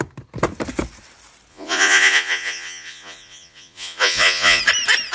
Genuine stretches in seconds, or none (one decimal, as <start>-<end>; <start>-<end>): 0.0-1.5; 4.6-5.1